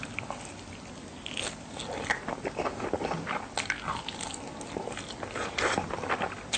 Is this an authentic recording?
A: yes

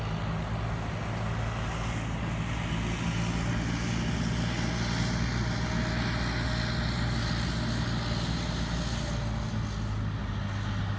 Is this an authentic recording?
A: yes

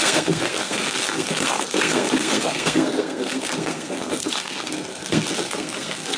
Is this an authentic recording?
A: no